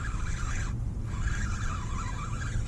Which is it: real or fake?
real